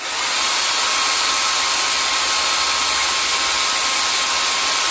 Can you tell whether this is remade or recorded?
recorded